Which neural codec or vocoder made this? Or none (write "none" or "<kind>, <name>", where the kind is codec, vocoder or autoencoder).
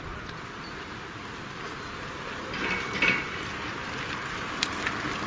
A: none